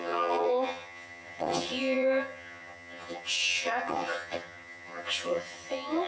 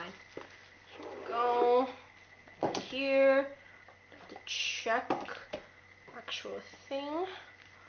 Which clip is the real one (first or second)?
second